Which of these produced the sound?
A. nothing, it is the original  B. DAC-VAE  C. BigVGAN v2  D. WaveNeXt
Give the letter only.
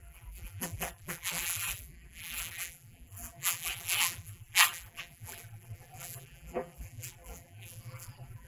C